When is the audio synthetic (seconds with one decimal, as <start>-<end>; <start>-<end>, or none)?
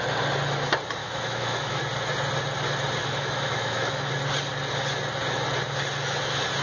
1.0-1.8; 3.0-4.1